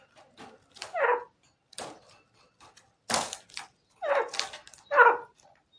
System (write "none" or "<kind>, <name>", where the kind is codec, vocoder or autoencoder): none